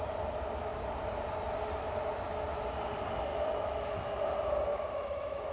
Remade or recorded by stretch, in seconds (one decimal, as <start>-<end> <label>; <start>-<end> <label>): 0.0-3.3 recorded; 3.3-4.2 remade; 4.2-4.7 recorded; 4.7-5.5 remade